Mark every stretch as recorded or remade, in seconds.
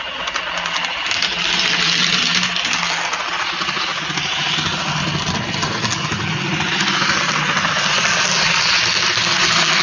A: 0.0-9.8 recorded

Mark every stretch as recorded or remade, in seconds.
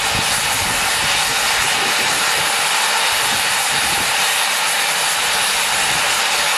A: 0.0-0.4 recorded; 0.4-0.9 remade; 0.9-1.3 recorded; 1.3-2.6 remade; 2.6-3.3 recorded; 3.3-6.0 remade; 6.0-6.6 recorded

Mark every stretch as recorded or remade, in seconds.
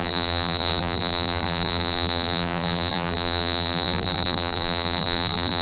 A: 0.0-5.6 remade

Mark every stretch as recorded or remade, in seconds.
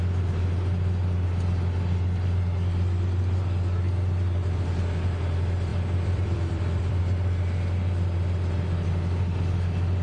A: 0.0-5.7 recorded; 5.7-7.0 remade; 7.0-10.0 recorded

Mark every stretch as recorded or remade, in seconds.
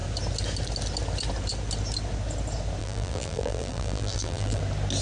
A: 0.0-2.8 recorded; 2.8-4.6 remade; 4.6-5.0 recorded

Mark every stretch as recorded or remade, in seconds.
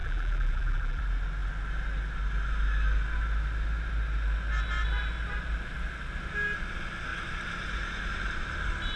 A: 0.0-1.0 remade; 1.0-9.0 recorded